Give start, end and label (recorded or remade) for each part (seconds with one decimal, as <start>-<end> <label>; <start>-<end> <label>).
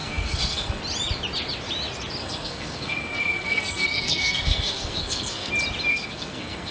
0.0-0.8 remade; 0.8-2.2 recorded; 2.2-5.5 remade; 5.5-5.9 recorded; 5.9-6.7 remade